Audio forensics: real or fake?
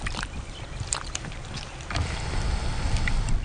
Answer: real